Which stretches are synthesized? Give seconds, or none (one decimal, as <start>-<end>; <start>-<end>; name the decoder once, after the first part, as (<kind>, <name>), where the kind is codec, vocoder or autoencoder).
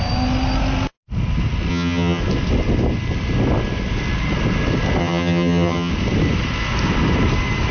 1.7-2.2 (vocoder, HiFi-GAN); 5.0-5.9